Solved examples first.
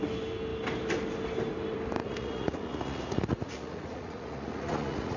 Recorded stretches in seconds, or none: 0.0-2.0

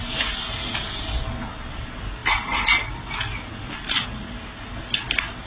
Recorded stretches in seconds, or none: 0.0-5.5

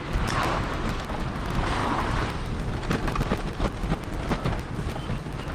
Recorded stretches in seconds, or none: 0.0-5.5

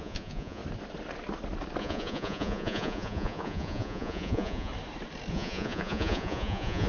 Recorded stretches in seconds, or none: 0.6-1.8; 4.7-5.3

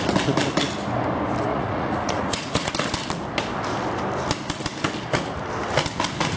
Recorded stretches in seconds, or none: 0.0-1.5; 2.7-6.4

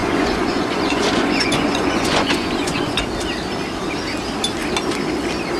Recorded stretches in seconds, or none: 3.0-5.6